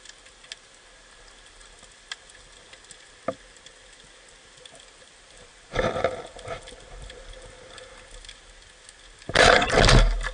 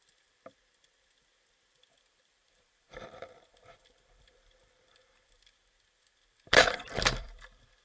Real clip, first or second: first